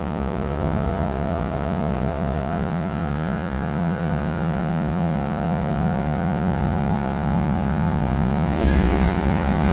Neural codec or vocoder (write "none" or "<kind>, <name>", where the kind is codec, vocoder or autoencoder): vocoder, Vocos